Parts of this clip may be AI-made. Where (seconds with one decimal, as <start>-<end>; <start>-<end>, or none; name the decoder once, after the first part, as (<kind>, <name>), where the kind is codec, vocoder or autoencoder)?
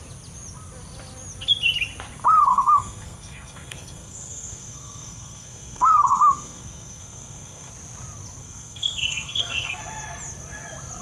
2.5-7.7 (codec, SNAC); 8.4-9.8